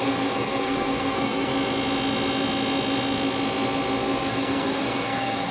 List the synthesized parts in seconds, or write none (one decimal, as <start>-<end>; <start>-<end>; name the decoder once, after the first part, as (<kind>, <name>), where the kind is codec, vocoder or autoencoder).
0.0-1.5 (codec, SNAC); 4.3-5.5